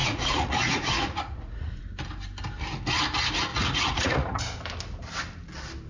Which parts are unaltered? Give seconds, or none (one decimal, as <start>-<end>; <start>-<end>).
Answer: 1.8-3.5; 4.4-5.9